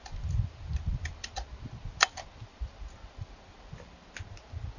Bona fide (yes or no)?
yes